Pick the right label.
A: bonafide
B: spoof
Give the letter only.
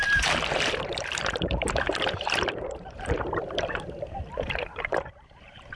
B